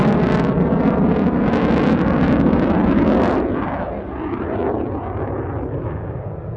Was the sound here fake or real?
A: real